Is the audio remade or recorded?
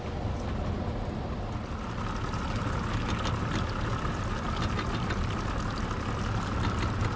recorded